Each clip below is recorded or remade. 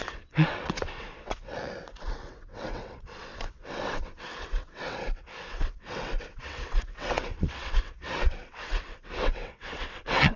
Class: remade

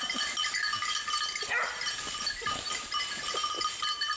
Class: recorded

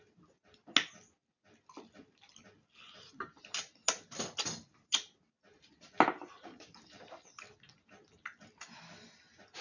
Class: recorded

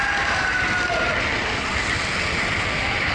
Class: recorded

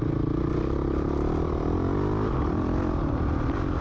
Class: recorded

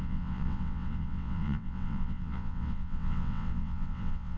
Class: remade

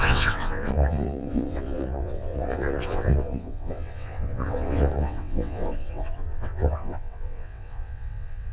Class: remade